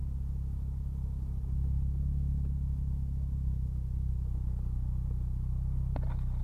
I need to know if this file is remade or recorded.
recorded